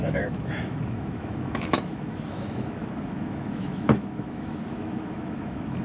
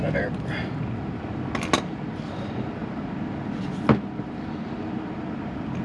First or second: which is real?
second